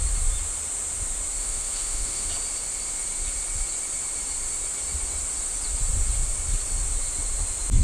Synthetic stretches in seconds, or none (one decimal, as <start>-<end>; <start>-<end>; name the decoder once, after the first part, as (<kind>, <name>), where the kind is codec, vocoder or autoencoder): 1.4-2.3 (autoencoder, DAC-VAE)